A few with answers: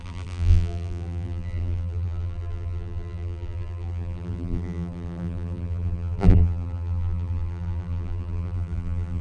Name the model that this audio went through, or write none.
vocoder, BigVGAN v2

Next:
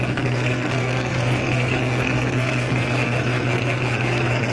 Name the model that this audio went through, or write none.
codec, SNAC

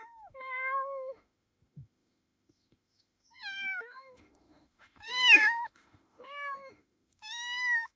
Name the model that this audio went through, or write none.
autoencoder, DAC-VAE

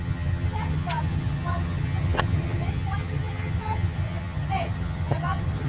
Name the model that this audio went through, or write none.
vocoder, HiFi-GAN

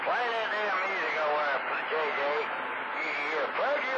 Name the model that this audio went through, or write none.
none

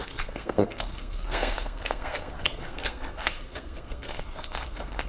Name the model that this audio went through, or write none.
codec, SNAC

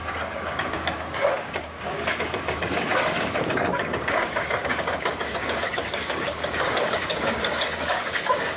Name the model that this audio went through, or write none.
codec, DAC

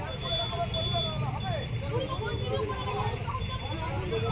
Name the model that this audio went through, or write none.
none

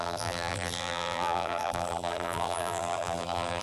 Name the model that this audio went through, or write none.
vocoder, BigVGAN v2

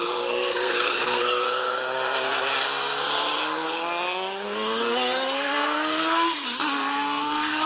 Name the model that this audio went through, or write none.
codec, SNAC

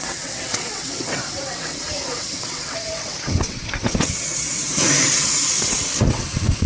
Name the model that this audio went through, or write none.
vocoder, WaveNeXt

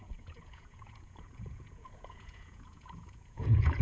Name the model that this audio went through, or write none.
vocoder, Vocos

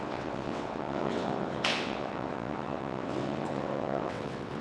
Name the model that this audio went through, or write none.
vocoder, WaveNeXt